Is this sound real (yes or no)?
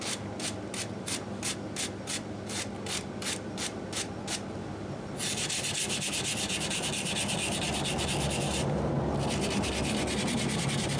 yes